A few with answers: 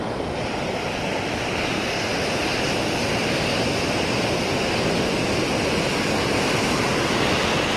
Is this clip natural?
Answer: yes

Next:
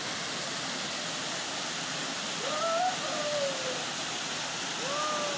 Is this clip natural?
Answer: yes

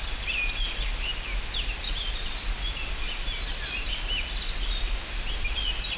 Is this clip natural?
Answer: yes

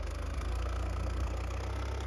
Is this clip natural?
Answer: no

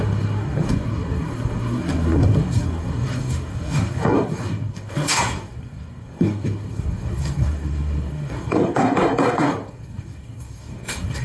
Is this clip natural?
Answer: no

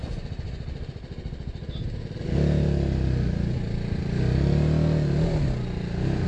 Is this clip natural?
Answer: yes